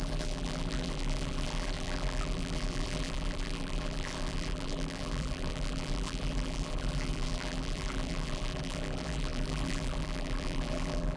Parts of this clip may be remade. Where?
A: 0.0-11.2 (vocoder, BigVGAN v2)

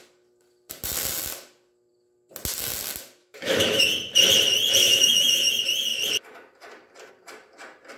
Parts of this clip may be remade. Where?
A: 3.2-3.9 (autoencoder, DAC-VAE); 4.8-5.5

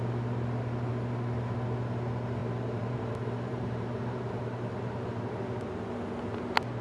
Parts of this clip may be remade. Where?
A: 2.4-5.3 (vocoder, BigVGAN v2)

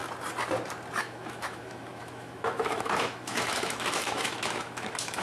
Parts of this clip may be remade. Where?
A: 1.0-5.2 (autoencoder, DAC-VAE)